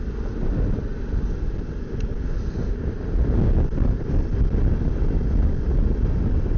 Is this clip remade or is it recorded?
recorded